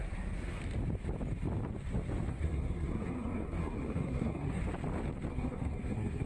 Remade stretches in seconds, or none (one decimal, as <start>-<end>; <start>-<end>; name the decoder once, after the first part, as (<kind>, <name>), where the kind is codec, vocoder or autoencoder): 0.0-0.6 (codec, SNAC); 2.3-4.6; 5.3-6.3